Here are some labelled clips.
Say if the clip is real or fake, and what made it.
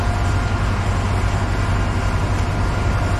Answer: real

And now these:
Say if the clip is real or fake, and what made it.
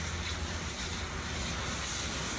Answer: real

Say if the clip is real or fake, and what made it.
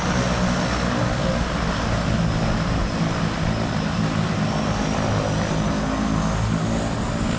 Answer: real